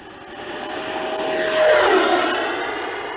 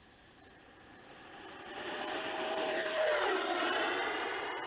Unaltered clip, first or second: first